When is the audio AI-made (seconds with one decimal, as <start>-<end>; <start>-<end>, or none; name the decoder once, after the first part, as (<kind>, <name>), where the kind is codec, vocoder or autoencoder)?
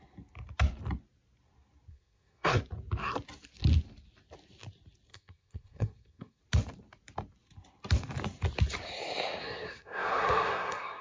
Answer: 1.9-2.6 (codec, SNAC); 5.1-6.4; 9.4-11.0